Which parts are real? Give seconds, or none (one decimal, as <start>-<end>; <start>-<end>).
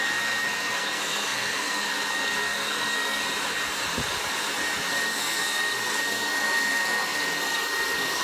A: 3.2-4.9